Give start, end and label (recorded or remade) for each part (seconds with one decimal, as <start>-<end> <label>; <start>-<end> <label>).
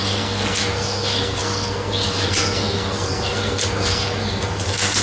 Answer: 0.0-5.0 remade